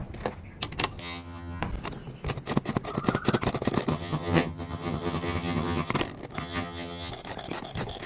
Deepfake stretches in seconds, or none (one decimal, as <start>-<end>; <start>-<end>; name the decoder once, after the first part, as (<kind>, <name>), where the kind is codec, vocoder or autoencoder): 1.0-1.6 (vocoder, HiFi-GAN); 3.9-5.9; 6.4-7.1